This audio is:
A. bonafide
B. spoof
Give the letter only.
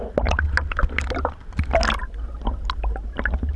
A